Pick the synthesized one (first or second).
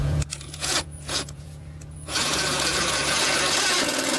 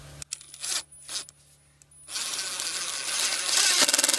first